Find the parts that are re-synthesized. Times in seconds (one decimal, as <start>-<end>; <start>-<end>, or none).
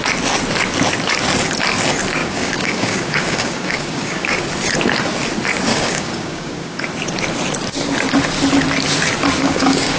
2.2-4.4; 5.7-6.8; 9.4-10.0